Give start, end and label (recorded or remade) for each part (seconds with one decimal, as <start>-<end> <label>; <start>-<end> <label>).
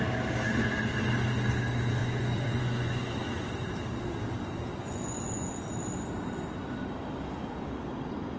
0.0-2.0 recorded; 2.0-3.1 remade; 3.1-4.8 recorded; 4.8-5.5 remade; 5.5-8.4 recorded